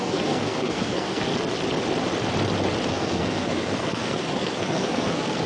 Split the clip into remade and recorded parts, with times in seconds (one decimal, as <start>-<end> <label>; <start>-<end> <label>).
0.0-1.3 remade; 1.3-2.9 recorded; 2.9-5.5 remade